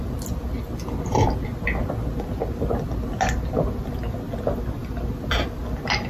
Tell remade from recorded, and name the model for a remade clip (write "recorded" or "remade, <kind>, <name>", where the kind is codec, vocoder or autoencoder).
recorded